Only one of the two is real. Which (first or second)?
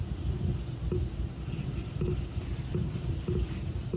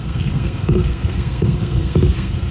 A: first